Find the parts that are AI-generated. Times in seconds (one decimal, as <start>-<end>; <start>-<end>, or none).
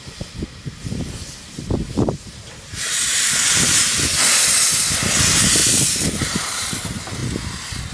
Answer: 0.8-3.6; 5.6-6.8